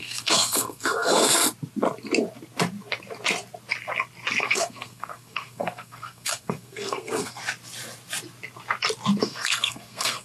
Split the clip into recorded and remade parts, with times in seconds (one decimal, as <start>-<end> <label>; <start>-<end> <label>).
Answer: 0.0-1.4 remade; 1.4-4.4 recorded; 4.4-7.4 remade; 7.4-9.2 recorded; 9.2-10.2 remade